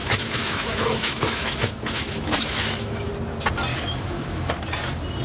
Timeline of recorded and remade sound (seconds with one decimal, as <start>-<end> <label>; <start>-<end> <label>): 0.0-3.1 remade; 3.1-3.7 recorded; 3.7-4.5 remade; 4.5-5.2 recorded